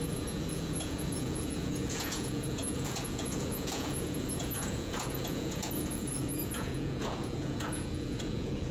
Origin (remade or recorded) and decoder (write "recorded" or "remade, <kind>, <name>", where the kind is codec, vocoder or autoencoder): remade, vocoder, Vocos